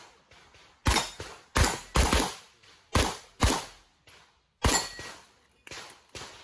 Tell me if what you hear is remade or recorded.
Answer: recorded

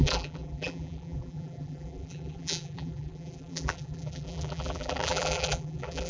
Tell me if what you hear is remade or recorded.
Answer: remade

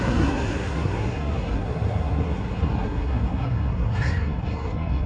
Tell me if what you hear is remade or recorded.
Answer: remade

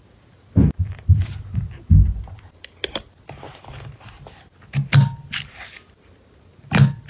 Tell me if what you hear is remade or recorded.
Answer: recorded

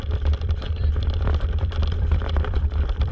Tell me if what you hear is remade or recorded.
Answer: remade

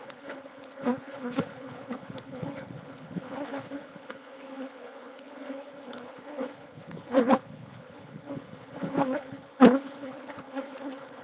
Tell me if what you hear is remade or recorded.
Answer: remade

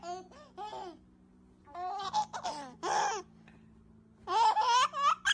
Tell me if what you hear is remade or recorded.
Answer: recorded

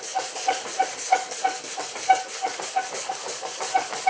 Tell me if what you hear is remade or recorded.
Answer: remade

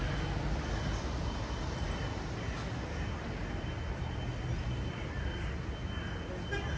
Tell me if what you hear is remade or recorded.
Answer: recorded